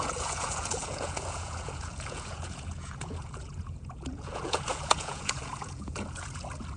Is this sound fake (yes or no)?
yes